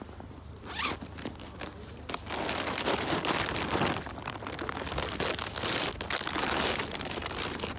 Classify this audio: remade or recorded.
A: recorded